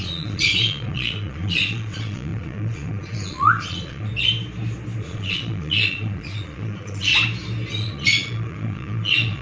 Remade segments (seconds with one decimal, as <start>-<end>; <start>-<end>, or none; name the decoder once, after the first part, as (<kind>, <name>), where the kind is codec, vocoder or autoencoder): 0.0-4.1 (vocoder, Vocos); 5.0-7.1; 7.7-9.4